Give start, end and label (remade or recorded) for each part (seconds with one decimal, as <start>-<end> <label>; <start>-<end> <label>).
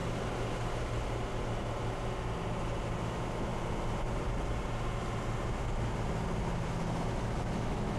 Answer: 0.0-3.0 recorded; 3.0-3.5 remade; 3.5-7.6 recorded; 7.6-8.0 remade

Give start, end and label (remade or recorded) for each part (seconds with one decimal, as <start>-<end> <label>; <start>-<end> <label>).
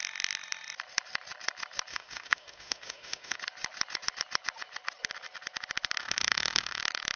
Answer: 0.0-1.9 recorded; 1.9-3.4 remade; 3.4-6.0 recorded; 6.0-6.8 remade; 6.8-7.2 recorded